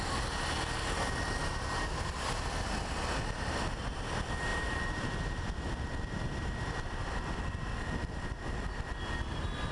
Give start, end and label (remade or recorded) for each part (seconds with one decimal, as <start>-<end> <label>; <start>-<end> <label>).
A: 0.0-4.5 recorded; 4.5-5.2 remade; 5.2-9.7 recorded